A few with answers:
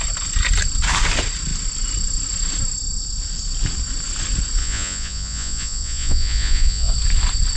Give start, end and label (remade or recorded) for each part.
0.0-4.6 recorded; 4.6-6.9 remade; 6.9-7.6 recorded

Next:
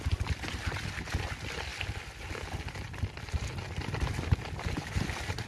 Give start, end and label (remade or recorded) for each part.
0.0-5.5 recorded

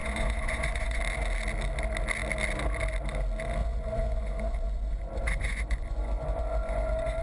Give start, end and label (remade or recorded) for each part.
0.0-1.0 remade; 1.0-3.6 recorded; 3.6-7.2 remade

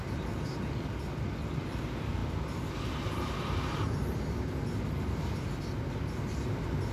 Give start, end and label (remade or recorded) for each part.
0.0-6.9 recorded

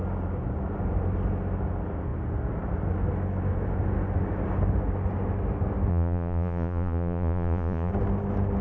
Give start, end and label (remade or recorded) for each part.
0.0-5.9 recorded; 5.9-7.9 remade; 7.9-8.6 recorded

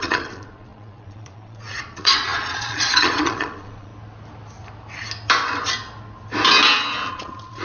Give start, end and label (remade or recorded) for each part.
0.0-3.9 remade; 3.9-7.1 recorded; 7.1-7.6 remade

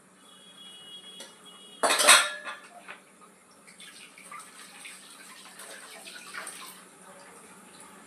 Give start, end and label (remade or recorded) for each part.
0.0-8.1 recorded